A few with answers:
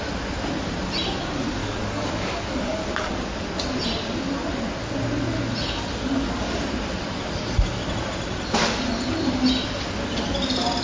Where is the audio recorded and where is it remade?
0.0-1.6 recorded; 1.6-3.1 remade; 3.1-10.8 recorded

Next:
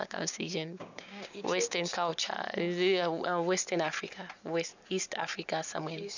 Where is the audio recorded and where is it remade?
0.0-2.1 remade; 2.1-5.8 recorded; 5.8-6.2 remade

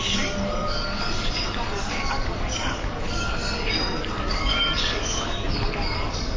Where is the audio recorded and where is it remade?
0.0-3.4 remade; 3.4-4.0 recorded; 4.0-6.4 remade

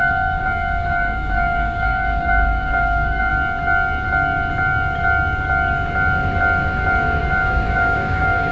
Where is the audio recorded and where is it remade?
0.0-3.3 remade; 3.3-7.2 recorded; 7.2-8.5 remade